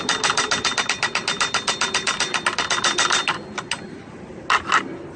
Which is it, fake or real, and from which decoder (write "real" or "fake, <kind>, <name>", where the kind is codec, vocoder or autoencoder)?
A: real